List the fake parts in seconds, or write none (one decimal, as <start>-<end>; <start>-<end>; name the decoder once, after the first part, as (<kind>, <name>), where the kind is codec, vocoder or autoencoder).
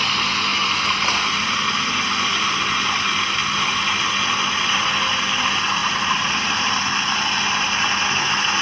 none